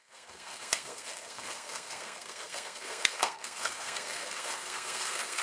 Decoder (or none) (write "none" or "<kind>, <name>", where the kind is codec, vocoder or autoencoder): codec, SNAC